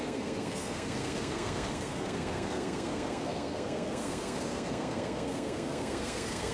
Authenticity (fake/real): fake